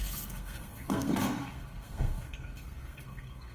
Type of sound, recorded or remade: remade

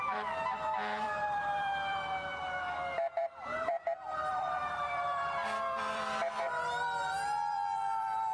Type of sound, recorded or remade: remade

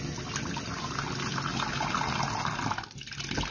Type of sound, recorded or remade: recorded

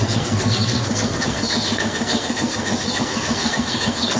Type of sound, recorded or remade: remade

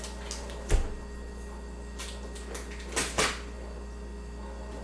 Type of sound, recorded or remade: recorded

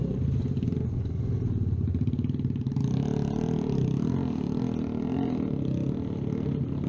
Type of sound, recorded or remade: recorded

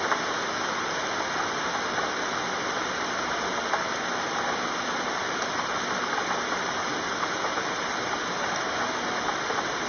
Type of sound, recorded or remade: recorded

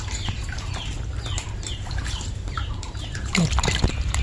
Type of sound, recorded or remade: remade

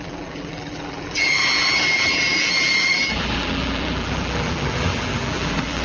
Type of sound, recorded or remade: remade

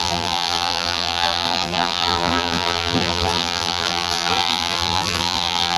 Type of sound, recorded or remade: remade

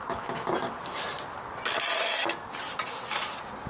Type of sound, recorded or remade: recorded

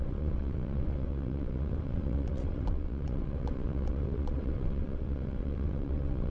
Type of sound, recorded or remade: remade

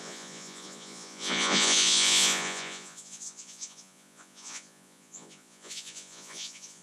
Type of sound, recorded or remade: remade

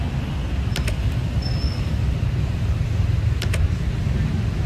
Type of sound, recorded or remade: recorded